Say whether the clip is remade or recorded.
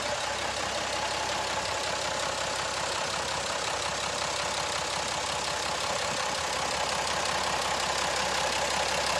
recorded